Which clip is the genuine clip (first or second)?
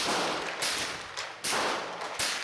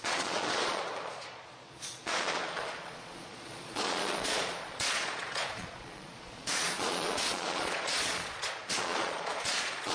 first